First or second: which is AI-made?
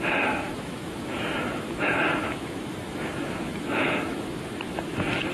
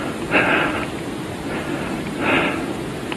first